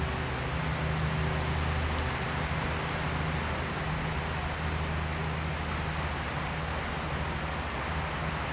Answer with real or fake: real